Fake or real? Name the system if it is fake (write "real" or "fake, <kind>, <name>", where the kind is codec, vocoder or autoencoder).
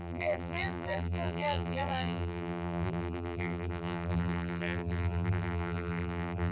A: fake, vocoder, BigVGAN v2